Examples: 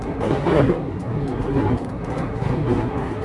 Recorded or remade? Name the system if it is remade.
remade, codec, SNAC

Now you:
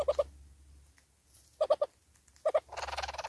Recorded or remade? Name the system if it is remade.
recorded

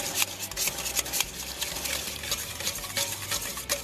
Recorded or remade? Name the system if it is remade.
recorded